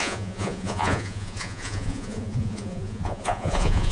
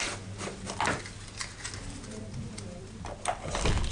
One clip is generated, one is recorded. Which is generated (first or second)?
first